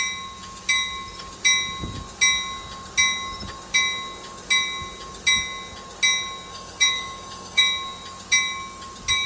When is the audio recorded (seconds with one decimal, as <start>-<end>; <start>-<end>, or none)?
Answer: 0.0-6.5; 7.6-9.3